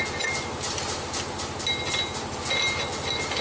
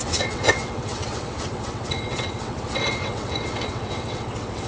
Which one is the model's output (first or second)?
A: second